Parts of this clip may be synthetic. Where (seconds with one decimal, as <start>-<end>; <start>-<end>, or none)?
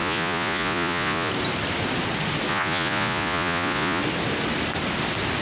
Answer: 0.0-1.3; 2.5-4.0